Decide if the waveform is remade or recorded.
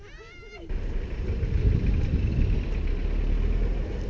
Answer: recorded